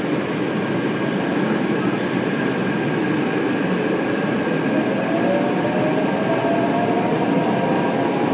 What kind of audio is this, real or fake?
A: real